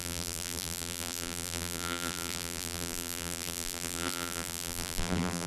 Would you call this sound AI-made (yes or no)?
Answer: yes